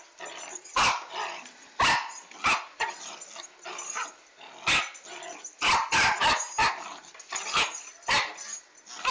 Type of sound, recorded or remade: recorded